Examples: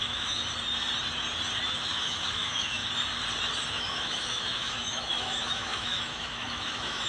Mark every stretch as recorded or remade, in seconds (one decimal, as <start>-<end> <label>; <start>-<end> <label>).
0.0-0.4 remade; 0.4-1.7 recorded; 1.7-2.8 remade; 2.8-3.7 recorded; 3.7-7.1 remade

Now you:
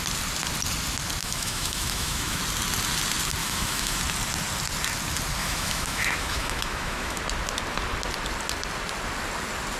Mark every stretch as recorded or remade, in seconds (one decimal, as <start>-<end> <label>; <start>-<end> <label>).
0.0-1.2 recorded; 1.2-2.4 remade; 2.4-3.4 recorded; 3.4-4.0 remade; 4.0-5.4 recorded; 5.4-7.2 remade; 7.2-9.8 recorded

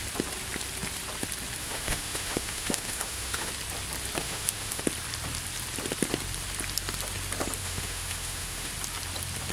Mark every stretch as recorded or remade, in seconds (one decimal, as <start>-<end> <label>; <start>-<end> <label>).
0.0-1.6 recorded; 1.6-3.5 remade; 3.5-4.2 recorded; 4.2-4.8 remade; 4.8-7.6 recorded; 7.6-8.7 remade; 8.7-9.5 recorded